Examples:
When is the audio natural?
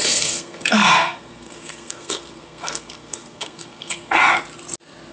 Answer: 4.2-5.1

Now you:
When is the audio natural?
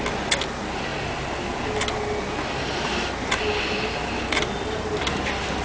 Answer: 0.0-5.6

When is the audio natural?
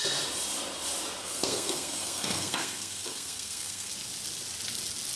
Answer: 0.0-1.2; 3.9-5.2